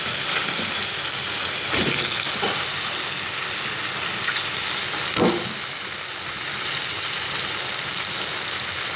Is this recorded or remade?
recorded